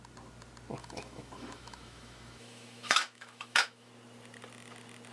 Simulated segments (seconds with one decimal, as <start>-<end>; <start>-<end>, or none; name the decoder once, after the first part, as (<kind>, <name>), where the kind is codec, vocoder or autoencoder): 0.8-3.9 (autoencoder, DAC-VAE)